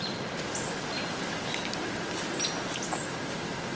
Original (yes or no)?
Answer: yes